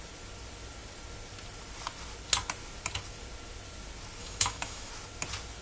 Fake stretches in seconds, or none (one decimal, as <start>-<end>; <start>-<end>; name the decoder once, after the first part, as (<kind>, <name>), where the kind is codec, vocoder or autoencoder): 4.2-4.9 (autoencoder, DAC-VAE)